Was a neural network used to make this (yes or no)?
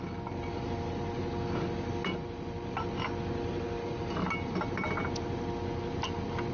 no